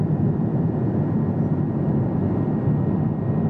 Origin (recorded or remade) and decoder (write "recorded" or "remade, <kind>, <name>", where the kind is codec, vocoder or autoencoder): recorded